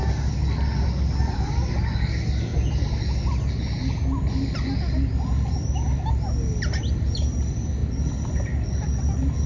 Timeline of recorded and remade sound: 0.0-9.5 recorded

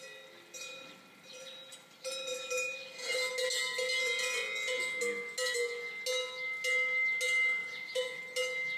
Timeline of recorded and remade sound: 0.0-7.6 recorded; 7.6-8.2 remade; 8.2-8.8 recorded